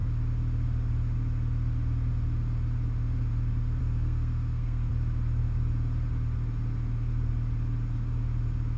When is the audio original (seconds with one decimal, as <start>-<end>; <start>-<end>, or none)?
0.0-3.8; 4.9-8.8